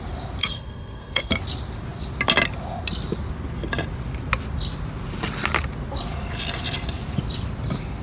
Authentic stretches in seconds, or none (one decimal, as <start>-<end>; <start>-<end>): 0.0-0.4; 1.3-8.0